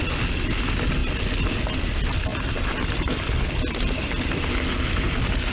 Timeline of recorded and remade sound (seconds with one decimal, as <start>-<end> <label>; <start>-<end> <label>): 0.0-1.0 recorded; 1.0-1.8 remade; 1.8-2.3 recorded; 2.3-4.5 remade; 4.5-5.5 recorded